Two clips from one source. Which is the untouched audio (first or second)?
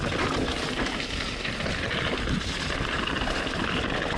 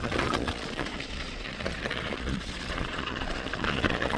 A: first